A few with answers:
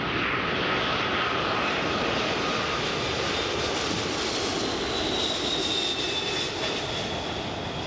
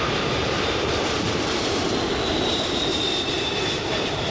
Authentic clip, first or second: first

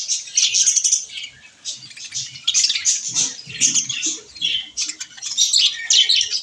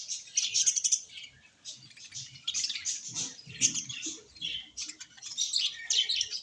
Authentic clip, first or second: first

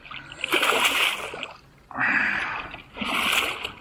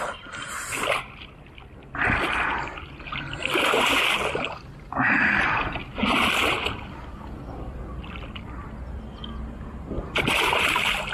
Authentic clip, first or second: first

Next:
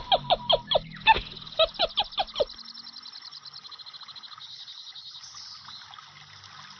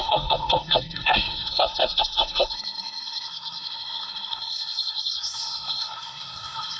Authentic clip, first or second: first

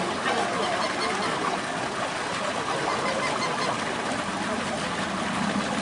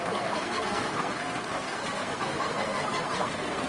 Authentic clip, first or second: first